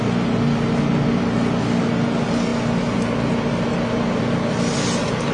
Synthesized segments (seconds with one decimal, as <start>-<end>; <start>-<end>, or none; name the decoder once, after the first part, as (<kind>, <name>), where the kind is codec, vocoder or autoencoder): none